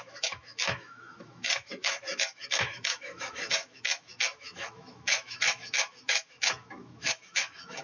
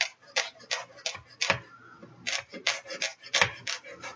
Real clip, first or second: second